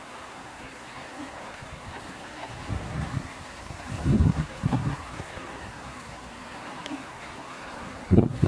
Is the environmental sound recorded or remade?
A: remade